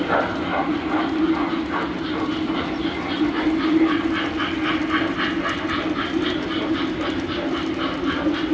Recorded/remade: recorded